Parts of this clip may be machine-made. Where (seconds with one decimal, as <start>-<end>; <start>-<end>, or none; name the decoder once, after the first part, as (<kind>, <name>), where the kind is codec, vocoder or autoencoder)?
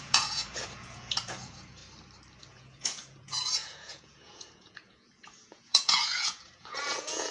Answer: 0.0-1.8 (vocoder, Vocos); 2.4-7.3